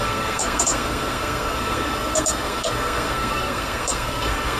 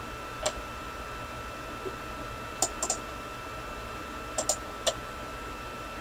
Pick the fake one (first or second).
first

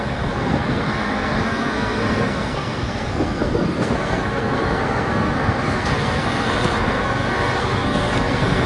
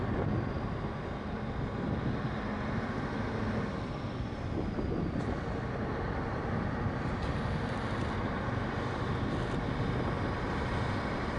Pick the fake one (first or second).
first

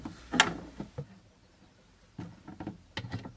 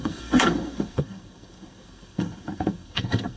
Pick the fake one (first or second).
second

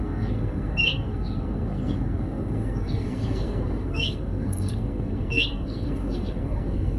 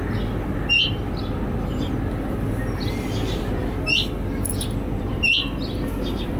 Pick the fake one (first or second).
first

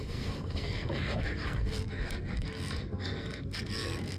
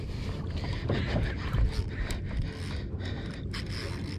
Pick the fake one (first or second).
first